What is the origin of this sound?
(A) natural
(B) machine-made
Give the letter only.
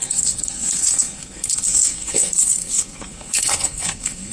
B